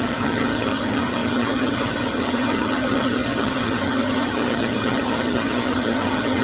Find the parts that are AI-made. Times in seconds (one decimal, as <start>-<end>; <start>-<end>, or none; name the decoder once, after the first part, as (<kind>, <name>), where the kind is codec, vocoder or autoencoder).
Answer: 0.0-6.4 (vocoder, HiFi-GAN)